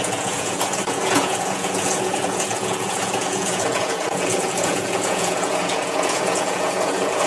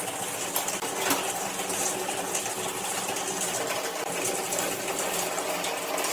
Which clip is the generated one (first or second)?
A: first